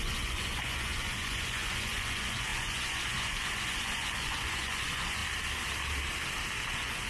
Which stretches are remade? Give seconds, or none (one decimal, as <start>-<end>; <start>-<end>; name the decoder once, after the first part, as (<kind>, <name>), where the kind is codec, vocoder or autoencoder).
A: 0.0-5.2 (vocoder, Vocos); 6.6-7.1